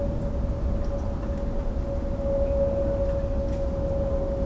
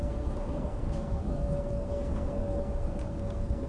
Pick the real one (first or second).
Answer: first